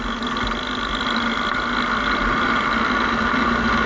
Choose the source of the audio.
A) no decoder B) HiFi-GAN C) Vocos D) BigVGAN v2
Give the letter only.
A